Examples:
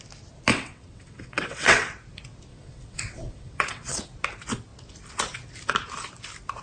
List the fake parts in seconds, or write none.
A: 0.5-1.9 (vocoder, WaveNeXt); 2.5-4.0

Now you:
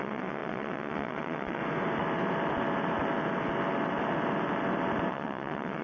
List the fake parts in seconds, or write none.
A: 0.0-1.6 (vocoder, WaveNeXt); 5.1-5.8

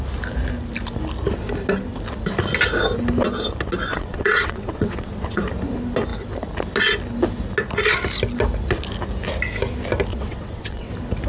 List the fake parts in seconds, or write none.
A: 3.9-5.4 (vocoder, WaveNeXt); 10.1-10.9

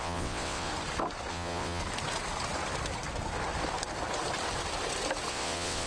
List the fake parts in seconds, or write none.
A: 0.0-0.7 (vocoder, WaveNeXt); 1.3-1.8; 5.3-5.9

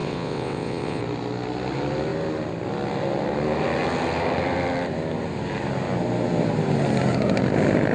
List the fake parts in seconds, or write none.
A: 0.0-1.0 (vocoder, WaveNeXt)

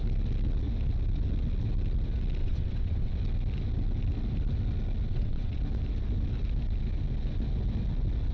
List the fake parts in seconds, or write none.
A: 2.4-3.1 (vocoder, WaveNeXt); 5.1-5.6